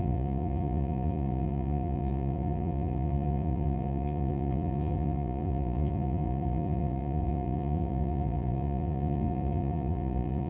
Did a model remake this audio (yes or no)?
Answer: yes